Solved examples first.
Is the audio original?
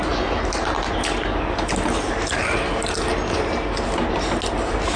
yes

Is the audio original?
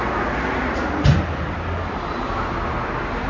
yes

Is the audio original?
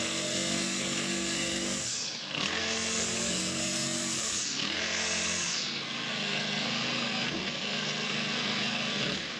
no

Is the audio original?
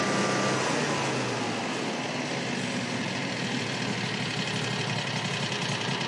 yes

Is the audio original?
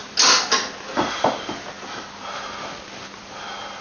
yes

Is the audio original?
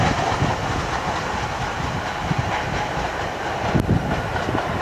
yes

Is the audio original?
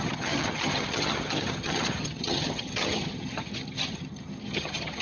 no